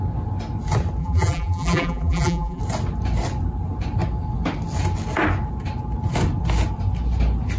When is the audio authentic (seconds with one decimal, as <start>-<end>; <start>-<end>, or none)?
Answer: 0.0-1.0; 2.6-7.6